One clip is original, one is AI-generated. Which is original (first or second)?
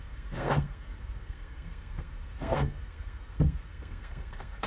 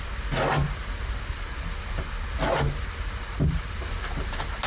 second